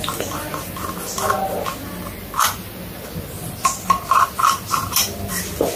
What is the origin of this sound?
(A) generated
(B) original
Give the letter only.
B